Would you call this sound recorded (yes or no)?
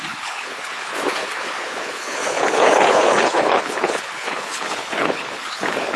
no